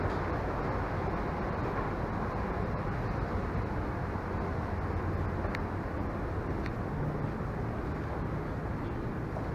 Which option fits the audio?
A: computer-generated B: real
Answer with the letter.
B